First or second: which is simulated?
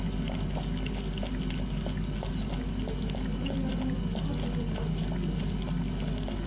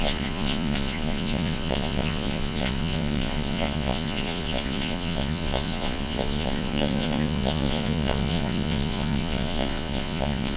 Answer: second